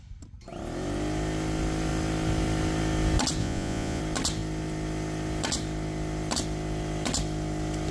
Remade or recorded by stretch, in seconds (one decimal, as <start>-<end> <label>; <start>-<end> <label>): 0.0-3.4 recorded; 3.4-4.0 remade; 4.0-7.9 recorded